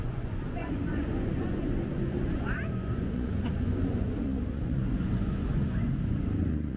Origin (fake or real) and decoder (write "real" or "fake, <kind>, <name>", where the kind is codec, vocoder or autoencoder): fake, vocoder, Vocos